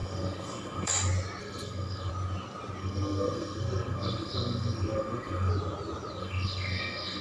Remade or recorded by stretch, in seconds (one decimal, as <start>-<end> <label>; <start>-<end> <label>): 0.0-0.9 remade; 0.9-1.4 recorded; 1.4-2.1 remade; 2.1-2.8 recorded; 2.8-5.5 remade; 5.5-6.2 recorded; 6.2-7.2 remade